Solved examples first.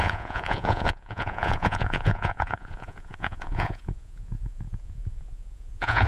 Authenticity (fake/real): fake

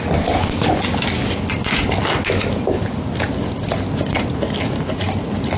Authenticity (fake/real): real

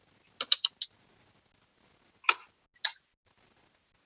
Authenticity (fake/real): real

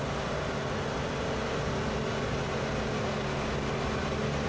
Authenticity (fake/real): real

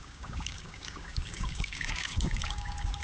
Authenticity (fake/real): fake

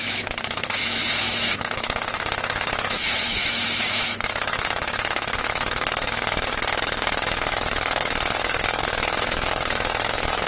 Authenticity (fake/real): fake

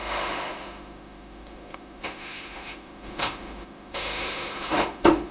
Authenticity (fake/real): fake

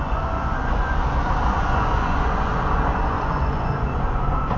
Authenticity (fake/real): fake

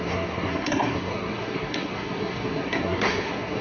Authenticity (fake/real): fake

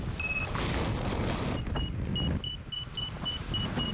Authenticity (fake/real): real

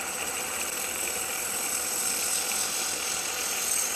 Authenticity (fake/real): real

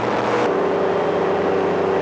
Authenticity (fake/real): real